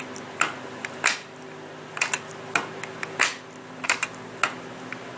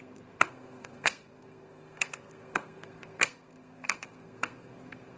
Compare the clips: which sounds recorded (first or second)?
first